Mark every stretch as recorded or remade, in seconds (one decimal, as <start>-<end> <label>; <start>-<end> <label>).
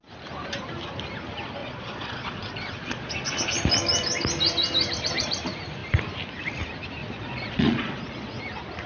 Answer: 0.0-1.6 recorded; 1.6-3.1 remade; 3.1-7.0 recorded; 7.0-8.4 remade; 8.4-8.9 recorded